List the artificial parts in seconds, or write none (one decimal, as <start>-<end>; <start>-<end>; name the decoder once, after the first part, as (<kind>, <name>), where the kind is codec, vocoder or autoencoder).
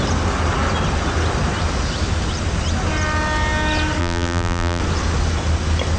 4.0-4.8 (vocoder, BigVGAN v2)